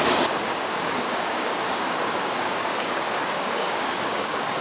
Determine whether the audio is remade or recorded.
remade